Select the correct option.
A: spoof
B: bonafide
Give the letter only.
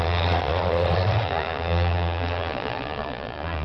A